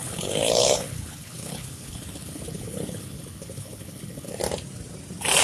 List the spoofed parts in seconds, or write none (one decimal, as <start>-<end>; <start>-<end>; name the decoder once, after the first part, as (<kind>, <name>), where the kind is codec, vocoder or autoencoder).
0.0-4.4 (codec, HILCodec)